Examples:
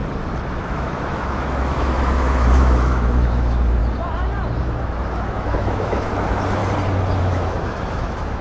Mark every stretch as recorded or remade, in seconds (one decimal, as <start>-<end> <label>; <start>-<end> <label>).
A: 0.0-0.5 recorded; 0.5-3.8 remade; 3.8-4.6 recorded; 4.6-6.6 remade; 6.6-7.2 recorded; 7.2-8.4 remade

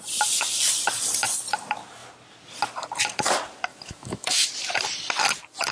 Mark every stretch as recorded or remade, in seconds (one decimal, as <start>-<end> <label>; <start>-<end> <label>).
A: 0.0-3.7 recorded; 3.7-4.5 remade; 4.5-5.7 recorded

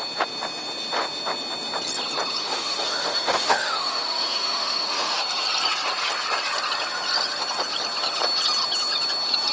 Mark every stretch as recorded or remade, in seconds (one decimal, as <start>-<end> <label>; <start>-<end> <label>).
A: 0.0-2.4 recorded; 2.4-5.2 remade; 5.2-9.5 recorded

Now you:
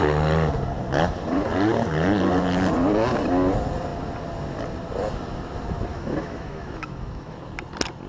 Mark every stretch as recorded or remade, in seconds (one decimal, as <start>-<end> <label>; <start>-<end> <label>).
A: 0.0-5.9 recorded; 5.9-7.4 remade; 7.4-8.1 recorded

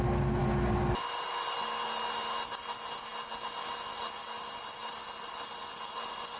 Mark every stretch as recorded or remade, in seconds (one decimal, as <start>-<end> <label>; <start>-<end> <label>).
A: 0.0-6.4 recorded

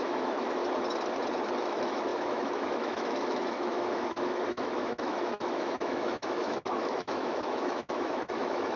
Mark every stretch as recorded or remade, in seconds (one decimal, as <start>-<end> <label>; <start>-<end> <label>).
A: 0.0-0.6 remade; 0.6-1.6 recorded; 1.6-8.8 remade